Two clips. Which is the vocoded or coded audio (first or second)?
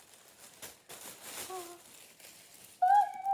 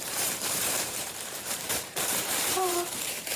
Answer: second